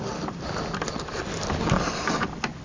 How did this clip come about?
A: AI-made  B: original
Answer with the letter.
B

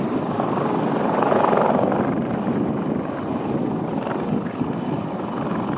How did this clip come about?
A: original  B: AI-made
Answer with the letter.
A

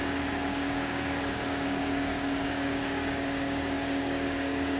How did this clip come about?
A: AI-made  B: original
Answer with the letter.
A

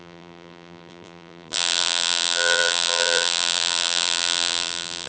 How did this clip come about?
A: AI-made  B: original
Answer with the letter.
A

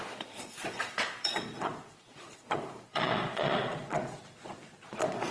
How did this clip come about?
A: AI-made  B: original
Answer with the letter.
A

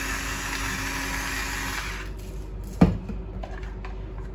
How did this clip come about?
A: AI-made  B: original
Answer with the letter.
B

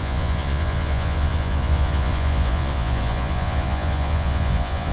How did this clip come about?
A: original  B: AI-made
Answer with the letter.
B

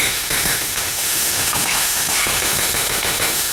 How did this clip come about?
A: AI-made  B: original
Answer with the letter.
A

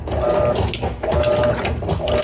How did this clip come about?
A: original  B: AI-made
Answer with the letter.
A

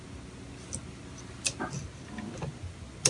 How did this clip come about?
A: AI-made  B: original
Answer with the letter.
B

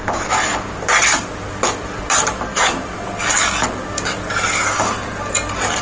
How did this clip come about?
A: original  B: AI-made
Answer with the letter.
A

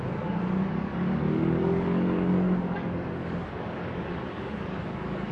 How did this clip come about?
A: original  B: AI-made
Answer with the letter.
B